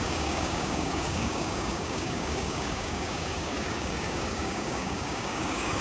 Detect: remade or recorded remade